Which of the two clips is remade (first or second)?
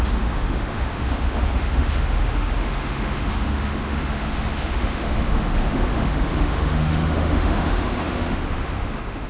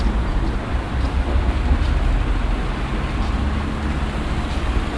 first